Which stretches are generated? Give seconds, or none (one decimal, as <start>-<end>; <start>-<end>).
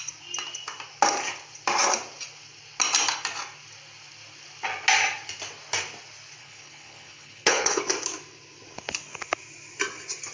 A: 6.4-7.8